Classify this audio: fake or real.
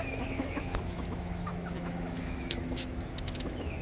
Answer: fake